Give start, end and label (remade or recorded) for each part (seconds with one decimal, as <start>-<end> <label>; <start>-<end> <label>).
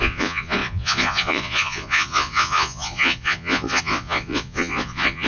0.0-5.3 remade